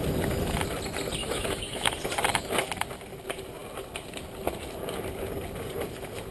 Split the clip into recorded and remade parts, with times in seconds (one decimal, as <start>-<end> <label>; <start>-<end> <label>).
0.0-1.2 recorded; 1.2-1.9 remade; 1.9-6.3 recorded